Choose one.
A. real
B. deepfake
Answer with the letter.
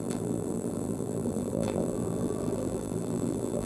B